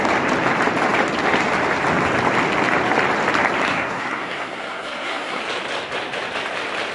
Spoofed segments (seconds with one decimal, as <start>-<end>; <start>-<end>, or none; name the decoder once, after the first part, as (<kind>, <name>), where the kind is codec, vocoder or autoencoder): 3.7-5.4 (codec, SNAC)